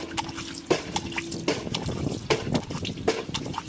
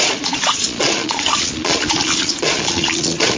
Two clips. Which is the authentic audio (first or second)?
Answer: first